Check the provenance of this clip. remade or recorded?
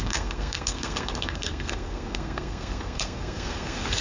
remade